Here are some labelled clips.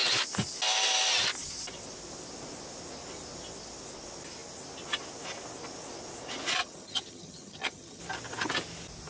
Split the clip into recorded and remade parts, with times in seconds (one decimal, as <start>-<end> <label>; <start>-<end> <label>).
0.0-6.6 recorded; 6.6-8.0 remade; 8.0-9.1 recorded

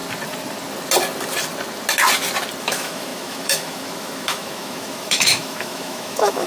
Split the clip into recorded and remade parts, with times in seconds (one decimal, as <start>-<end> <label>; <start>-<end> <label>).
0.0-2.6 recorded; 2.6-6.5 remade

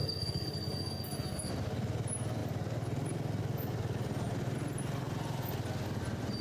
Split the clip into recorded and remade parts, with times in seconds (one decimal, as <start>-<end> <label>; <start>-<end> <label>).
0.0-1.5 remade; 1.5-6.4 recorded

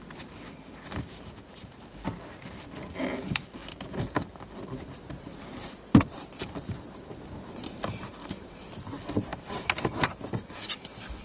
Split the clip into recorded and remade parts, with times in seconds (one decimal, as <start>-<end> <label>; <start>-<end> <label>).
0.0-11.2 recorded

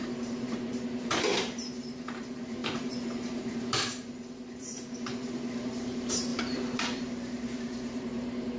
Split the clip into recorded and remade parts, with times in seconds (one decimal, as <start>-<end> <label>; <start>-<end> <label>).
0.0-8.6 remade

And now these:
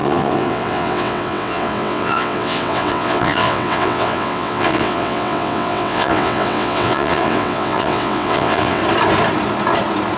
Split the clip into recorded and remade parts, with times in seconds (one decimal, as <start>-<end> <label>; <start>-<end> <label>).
0.0-8.8 remade; 8.8-10.2 recorded